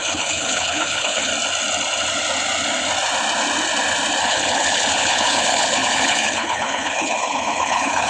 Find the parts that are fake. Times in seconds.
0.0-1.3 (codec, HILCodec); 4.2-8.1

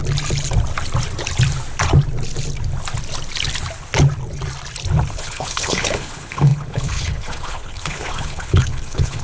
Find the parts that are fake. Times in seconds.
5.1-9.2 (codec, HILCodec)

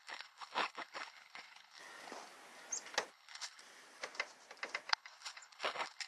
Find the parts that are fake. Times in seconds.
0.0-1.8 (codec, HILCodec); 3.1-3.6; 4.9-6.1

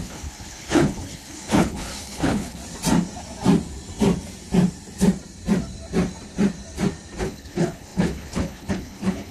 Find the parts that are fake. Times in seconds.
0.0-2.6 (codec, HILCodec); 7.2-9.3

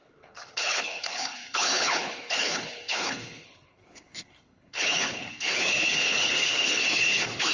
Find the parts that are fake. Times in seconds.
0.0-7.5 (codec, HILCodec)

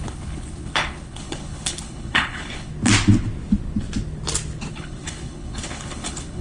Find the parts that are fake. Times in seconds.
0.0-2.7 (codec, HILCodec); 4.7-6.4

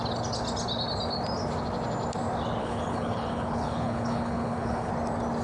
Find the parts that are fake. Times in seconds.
2.6-4.9 (codec, HILCodec)